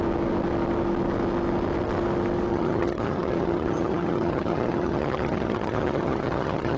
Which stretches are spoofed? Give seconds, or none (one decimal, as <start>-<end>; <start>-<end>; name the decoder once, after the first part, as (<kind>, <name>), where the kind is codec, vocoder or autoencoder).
2.5-6.8 (vocoder, HiFi-GAN)